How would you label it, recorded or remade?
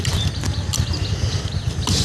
recorded